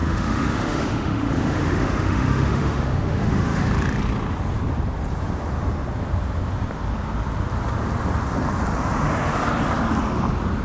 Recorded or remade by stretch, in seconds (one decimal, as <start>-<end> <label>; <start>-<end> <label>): 0.0-3.7 remade; 3.7-10.6 recorded